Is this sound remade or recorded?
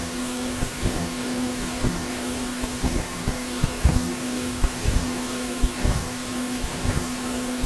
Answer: remade